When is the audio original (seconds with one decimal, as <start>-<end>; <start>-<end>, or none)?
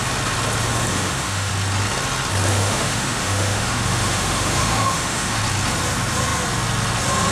0.0-0.9; 1.5-2.5; 5.4-7.3